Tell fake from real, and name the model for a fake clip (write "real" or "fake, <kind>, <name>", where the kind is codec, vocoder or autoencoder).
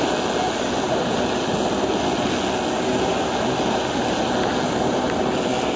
real